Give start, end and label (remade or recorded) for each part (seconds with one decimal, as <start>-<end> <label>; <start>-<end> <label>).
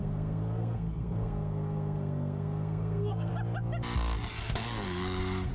0.0-3.3 remade; 3.3-4.4 recorded; 4.4-5.5 remade